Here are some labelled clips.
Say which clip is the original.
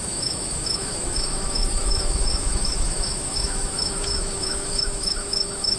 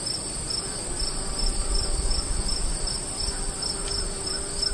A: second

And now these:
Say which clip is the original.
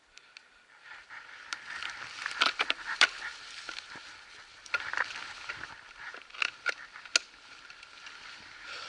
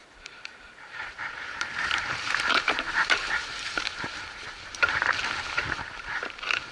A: first